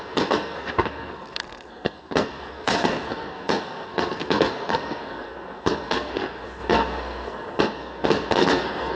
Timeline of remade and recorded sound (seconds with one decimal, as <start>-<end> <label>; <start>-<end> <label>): 0.0-9.0 remade